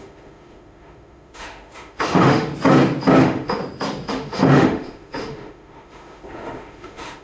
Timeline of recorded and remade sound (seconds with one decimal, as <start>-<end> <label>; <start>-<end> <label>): 0.0-2.5 remade; 2.5-3.2 recorded; 3.2-3.6 remade; 3.6-4.1 recorded; 4.1-7.2 remade